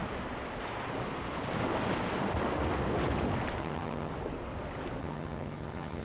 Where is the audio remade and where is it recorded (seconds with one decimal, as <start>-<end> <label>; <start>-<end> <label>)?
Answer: 0.0-3.6 recorded; 3.6-4.1 remade; 4.1-5.0 recorded; 5.0-6.0 remade